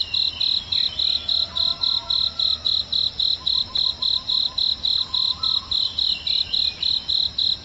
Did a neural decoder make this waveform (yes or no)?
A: no